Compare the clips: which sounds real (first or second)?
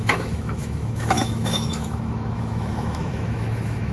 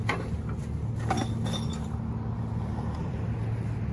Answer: second